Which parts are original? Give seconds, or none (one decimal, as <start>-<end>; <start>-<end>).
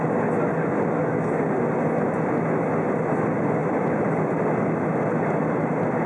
0.0-6.1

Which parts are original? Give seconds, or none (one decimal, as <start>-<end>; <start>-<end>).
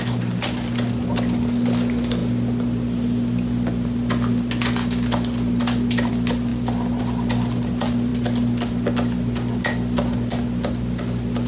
0.0-11.5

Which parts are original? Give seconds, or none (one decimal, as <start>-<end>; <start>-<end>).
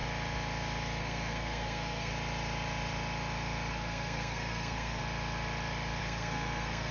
0.0-1.0; 2.1-3.7; 5.0-6.0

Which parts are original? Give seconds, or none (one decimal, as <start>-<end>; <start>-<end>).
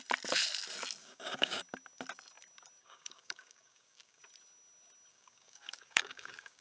0.0-1.0; 1.6-2.8; 4.2-5.1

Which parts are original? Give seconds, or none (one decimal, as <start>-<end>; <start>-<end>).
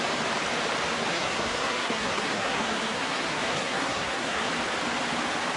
0.0-1.1; 4.5-5.6